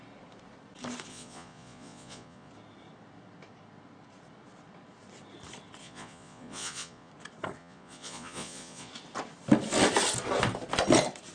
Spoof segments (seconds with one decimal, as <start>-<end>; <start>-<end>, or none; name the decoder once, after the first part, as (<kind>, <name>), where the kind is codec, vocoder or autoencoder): 1.1-2.5 (vocoder, Vocos); 5.8-7.1; 7.6-8.9